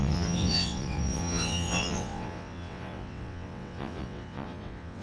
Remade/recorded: remade